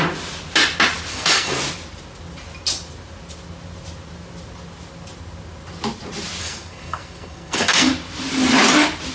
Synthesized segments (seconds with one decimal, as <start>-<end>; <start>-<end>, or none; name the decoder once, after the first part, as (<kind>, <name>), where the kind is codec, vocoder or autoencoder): 1.1-1.6 (codec, SNAC); 6.4-7.9